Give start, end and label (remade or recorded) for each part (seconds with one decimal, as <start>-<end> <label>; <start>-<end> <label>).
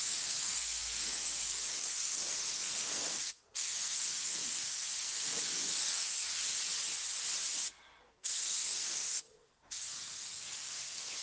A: 0.0-6.3 remade; 6.3-8.0 recorded; 8.0-11.2 remade